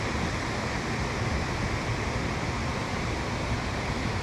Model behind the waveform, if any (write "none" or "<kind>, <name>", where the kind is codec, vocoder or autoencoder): vocoder, BigVGAN v2